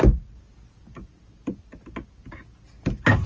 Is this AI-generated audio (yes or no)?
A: no